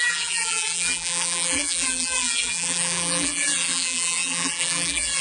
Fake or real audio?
fake